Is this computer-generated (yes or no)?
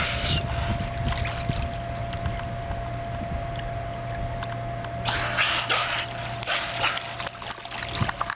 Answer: no